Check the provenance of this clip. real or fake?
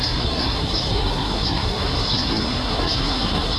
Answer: fake